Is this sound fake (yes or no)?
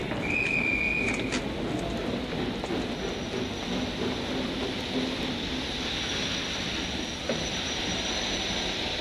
no